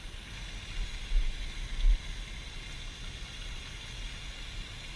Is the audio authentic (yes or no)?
yes